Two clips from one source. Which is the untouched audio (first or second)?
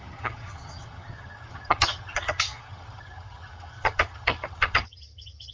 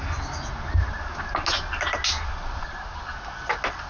second